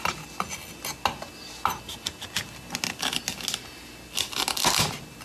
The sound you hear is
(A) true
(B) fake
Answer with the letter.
A